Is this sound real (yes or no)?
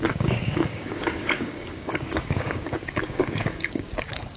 no